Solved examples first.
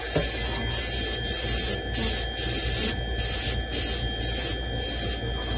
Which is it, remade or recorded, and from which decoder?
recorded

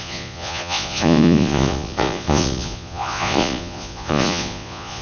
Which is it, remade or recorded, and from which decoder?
remade, vocoder, Vocos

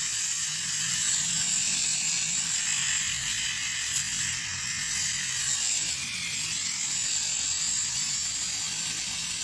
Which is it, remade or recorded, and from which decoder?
recorded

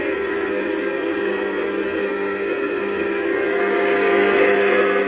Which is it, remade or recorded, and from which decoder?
remade, codec, SNAC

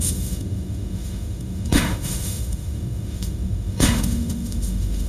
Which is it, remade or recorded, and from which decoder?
remade, autoencoder, DAC-VAE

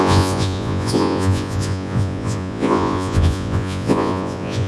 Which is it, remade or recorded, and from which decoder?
remade, vocoder, Vocos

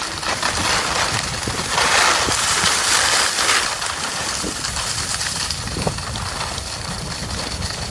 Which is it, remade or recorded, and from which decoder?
recorded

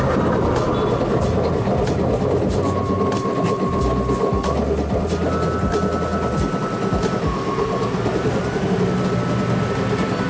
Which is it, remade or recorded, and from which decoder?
recorded